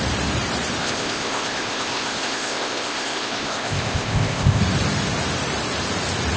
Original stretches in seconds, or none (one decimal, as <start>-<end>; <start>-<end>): 0.0-0.8; 4.6-6.4

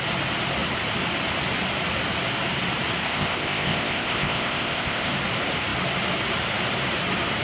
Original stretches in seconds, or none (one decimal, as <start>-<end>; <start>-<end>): 0.0-3.0; 5.1-7.4

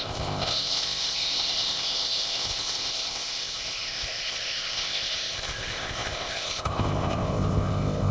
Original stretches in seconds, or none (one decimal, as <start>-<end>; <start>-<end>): none

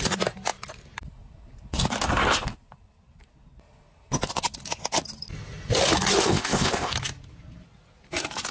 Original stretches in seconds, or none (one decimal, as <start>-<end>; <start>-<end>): 0.0-6.2; 6.9-8.5

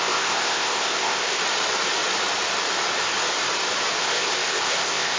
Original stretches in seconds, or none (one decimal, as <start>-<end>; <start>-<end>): 1.4-4.0

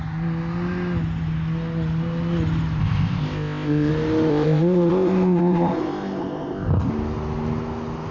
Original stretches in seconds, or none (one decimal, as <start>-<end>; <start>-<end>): 0.0-2.8; 3.9-4.3; 6.9-8.1

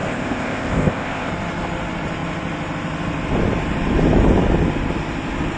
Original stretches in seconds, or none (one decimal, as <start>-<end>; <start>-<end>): 1.3-5.6